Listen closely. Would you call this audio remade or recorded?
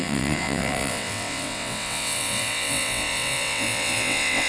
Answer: remade